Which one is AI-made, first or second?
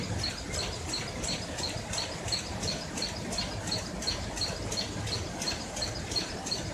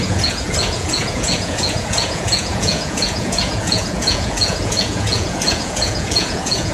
second